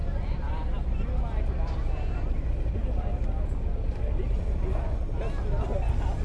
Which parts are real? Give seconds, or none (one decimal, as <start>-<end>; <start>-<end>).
0.5-1.3; 5.0-6.2